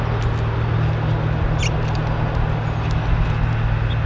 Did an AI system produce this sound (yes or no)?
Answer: no